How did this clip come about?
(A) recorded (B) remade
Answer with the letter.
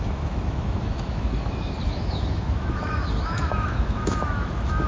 B